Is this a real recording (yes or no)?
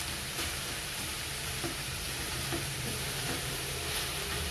no